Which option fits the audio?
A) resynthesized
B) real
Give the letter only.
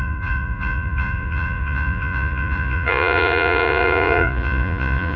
A